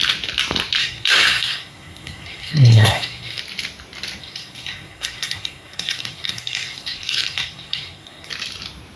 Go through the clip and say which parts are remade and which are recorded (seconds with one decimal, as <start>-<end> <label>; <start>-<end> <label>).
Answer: 0.0-0.8 recorded; 0.8-3.4 remade; 3.4-4.2 recorded; 4.2-8.3 remade; 8.3-9.0 recorded